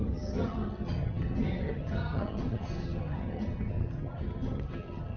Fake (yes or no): yes